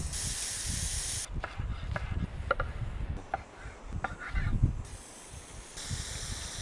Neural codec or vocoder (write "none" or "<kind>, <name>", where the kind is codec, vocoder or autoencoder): none